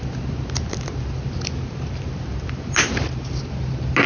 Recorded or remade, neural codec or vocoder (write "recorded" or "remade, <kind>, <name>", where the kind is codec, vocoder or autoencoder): recorded